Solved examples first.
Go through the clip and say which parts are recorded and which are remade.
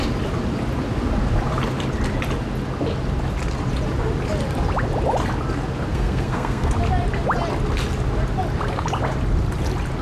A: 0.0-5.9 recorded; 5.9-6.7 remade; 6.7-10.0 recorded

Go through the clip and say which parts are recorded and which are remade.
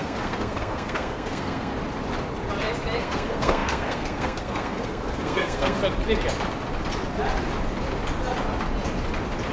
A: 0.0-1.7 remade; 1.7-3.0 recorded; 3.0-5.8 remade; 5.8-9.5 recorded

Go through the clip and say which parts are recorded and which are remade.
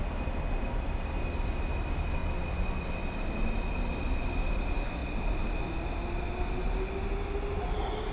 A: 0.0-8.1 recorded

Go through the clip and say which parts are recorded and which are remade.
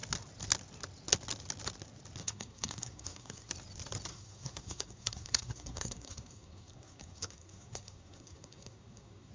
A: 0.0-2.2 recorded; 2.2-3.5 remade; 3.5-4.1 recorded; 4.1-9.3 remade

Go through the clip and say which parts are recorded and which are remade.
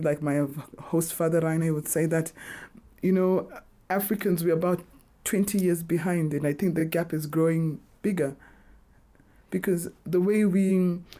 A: 0.0-11.2 recorded